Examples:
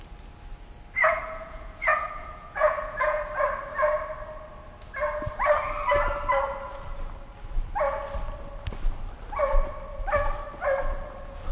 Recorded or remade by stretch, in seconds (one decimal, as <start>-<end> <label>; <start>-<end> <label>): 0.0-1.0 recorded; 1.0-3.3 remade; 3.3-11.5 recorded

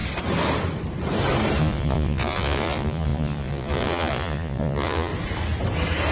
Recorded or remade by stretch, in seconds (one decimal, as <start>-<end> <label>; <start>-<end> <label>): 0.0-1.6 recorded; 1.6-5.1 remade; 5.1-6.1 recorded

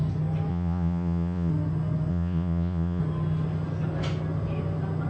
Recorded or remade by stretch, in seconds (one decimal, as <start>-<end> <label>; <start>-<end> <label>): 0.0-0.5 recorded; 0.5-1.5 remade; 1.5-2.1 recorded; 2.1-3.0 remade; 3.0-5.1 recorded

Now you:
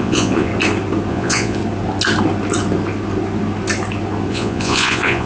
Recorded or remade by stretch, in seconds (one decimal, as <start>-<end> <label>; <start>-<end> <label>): 0.0-0.5 remade; 0.5-1.1 recorded; 1.1-1.6 remade; 1.6-4.3 recorded; 4.3-5.3 remade

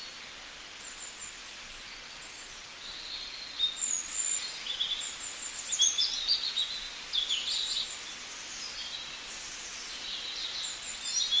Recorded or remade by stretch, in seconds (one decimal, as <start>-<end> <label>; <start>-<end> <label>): 0.0-3.8 recorded; 3.8-4.4 remade; 4.4-11.4 recorded

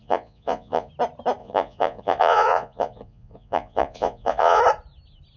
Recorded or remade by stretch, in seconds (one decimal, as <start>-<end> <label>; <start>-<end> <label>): 0.0-0.9 remade; 0.9-1.4 recorded; 1.4-4.6 remade; 4.6-5.4 recorded

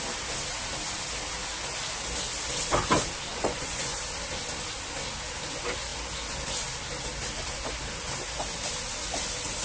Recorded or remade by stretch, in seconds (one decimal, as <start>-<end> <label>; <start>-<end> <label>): 0.0-3.3 recorded; 3.3-4.0 remade; 4.0-9.6 recorded

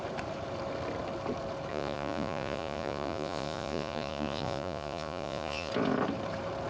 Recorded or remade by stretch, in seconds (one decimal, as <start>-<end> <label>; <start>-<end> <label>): 0.0-1.7 recorded; 1.7-5.7 remade; 5.7-6.7 recorded